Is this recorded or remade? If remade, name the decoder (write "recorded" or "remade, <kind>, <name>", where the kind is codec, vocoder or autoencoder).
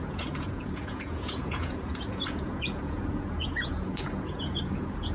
remade, vocoder, Vocos